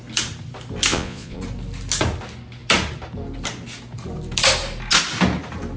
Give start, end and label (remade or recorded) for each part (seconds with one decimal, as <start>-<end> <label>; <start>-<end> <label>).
0.0-0.9 recorded; 0.9-1.4 remade; 1.4-5.8 recorded

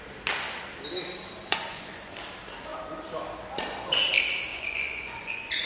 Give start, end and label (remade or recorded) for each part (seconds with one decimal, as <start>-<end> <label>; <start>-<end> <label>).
0.0-1.4 recorded; 1.4-2.1 remade; 2.1-4.5 recorded; 4.5-5.7 remade

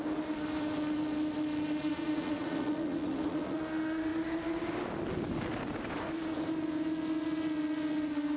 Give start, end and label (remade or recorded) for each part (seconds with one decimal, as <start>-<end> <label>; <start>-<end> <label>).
0.0-1.8 recorded; 1.8-3.6 remade; 3.6-8.4 recorded

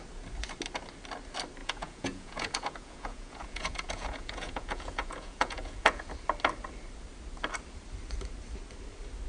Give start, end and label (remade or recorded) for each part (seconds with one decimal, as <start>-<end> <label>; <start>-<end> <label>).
0.0-1.6 recorded; 1.6-6.1 remade; 6.1-9.3 recorded

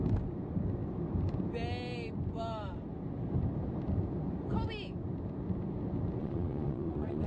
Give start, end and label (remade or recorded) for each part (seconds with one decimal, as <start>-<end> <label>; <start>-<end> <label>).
0.0-6.2 recorded; 6.2-7.3 remade